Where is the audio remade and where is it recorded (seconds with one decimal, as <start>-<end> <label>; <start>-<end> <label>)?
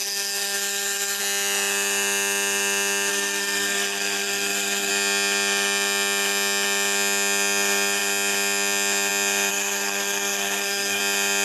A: 0.0-1.2 remade; 1.2-3.1 recorded; 3.1-4.9 remade; 4.9-9.5 recorded; 9.5-11.0 remade; 11.0-11.4 recorded